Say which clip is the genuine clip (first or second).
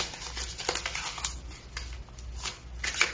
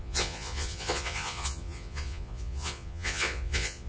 first